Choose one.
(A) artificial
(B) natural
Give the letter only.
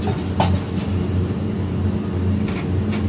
B